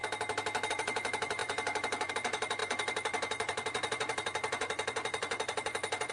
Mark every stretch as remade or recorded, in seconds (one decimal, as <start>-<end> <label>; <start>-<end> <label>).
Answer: 0.0-0.7 recorded; 0.7-6.1 remade

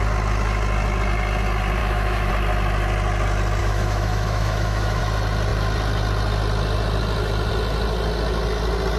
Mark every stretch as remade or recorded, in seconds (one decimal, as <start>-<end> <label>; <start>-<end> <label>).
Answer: 0.0-1.8 recorded; 1.8-2.3 remade; 2.3-3.6 recorded; 3.6-5.0 remade; 5.0-9.0 recorded

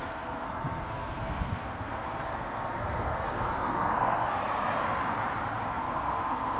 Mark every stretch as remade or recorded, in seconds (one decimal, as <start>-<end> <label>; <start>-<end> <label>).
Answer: 0.0-4.4 remade; 4.4-5.7 recorded; 5.7-6.6 remade